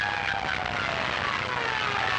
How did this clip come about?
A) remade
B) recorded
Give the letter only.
B